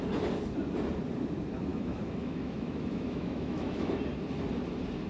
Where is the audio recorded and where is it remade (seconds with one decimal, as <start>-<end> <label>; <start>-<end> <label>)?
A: 0.0-1.7 recorded; 1.7-3.9 remade; 3.9-5.1 recorded